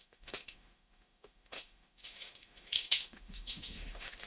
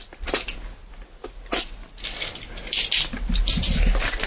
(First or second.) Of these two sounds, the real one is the second